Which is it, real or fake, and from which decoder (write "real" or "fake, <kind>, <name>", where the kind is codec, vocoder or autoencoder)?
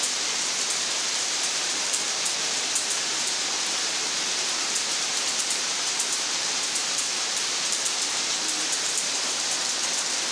fake, vocoder, BigVGAN v2